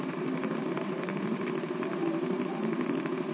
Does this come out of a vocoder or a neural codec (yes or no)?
no